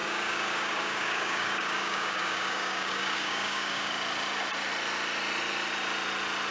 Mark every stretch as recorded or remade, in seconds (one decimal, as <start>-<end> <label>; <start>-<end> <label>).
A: 0.0-3.9 remade; 3.9-6.5 recorded